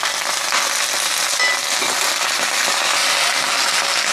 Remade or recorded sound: recorded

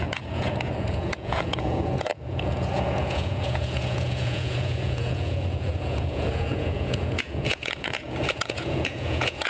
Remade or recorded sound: remade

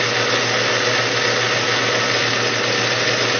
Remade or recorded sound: recorded